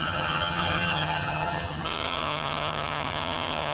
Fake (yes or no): yes